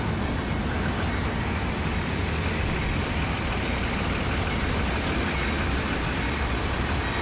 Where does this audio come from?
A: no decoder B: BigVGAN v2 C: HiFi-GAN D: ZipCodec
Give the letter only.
A